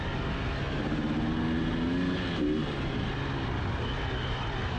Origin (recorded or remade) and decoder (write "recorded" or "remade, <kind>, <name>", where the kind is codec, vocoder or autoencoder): recorded